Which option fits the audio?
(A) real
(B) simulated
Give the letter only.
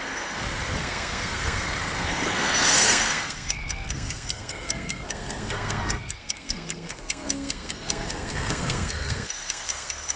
B